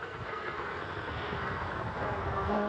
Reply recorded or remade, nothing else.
remade